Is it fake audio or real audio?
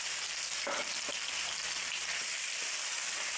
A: fake